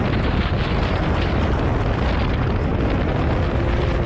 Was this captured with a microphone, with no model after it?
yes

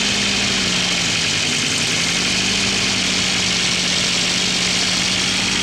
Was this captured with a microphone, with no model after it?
yes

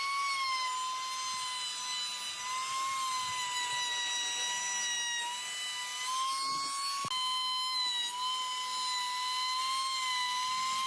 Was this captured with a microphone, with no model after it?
yes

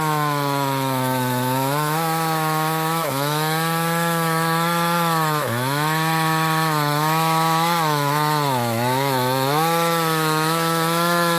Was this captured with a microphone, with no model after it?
no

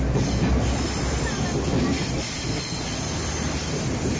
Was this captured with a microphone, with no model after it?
yes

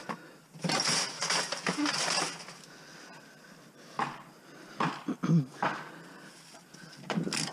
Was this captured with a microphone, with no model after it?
yes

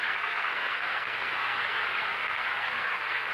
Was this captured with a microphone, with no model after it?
no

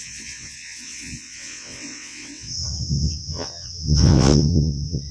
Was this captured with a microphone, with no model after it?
no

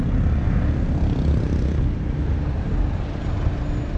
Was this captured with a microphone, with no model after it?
yes